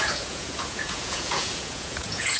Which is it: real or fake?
fake